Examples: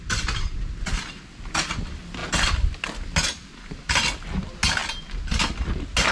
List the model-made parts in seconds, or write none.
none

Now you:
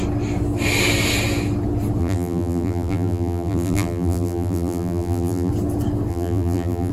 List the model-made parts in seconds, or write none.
2.0-5.5 (vocoder, BigVGAN v2); 6.1-6.9